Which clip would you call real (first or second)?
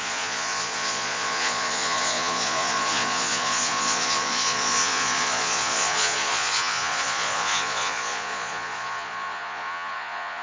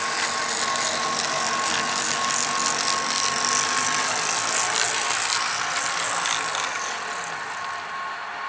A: second